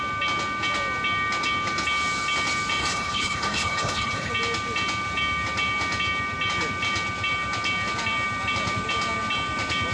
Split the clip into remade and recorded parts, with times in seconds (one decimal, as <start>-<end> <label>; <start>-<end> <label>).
0.0-2.8 recorded; 2.8-4.3 remade; 4.3-9.9 recorded